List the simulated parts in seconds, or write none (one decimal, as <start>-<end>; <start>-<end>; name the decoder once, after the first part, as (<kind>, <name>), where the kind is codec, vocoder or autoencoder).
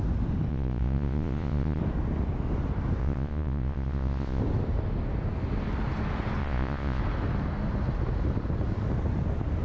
0.5-1.8 (vocoder, Vocos); 3.0-4.4; 6.4-7.0